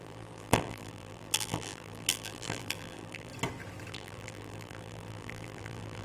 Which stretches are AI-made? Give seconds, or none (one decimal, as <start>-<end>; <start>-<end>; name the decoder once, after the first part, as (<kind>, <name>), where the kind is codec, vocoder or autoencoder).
0.0-3.3 (vocoder, BigVGAN v2); 3.9-6.0